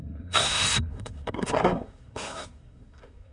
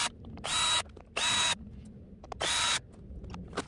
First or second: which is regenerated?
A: first